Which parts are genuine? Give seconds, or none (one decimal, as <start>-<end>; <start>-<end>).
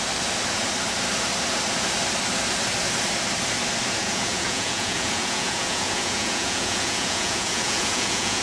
0.0-4.0